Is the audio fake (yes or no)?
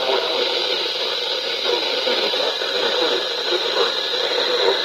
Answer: yes